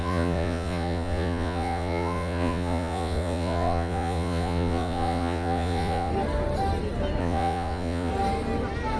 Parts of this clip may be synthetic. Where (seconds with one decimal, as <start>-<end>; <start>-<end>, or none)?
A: 0.0-6.1; 7.2-8.1